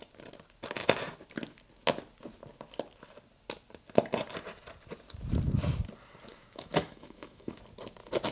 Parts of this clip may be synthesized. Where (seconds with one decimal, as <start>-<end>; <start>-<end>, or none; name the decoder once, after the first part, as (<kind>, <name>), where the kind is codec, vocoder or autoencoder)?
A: 6.3-7.6 (autoencoder, DAC-VAE)